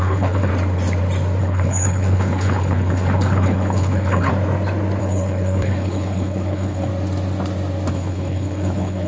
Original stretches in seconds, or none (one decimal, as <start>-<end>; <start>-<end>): 0.5-1.4; 4.3-5.0; 6.9-7.9